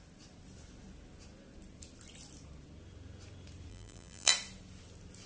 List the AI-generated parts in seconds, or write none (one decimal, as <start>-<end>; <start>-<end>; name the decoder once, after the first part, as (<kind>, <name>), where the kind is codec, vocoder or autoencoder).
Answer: 3.7-4.3 (vocoder, BigVGAN v2)